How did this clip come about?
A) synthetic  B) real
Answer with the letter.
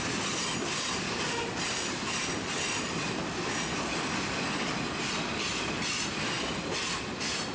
B